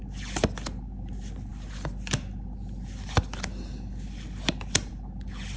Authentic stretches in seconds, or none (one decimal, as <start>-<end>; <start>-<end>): 0.0-5.6